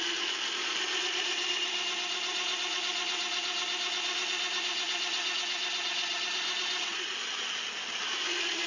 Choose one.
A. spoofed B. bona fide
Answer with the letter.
B